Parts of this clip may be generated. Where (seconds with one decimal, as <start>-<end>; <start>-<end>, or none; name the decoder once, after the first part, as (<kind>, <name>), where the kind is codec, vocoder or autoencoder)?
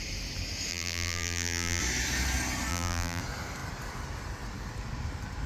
0.7-1.8 (vocoder, BigVGAN v2); 2.7-3.2